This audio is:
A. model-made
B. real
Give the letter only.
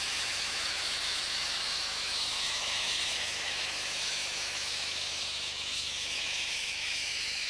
A